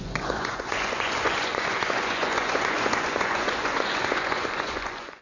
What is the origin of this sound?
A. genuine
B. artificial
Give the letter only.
B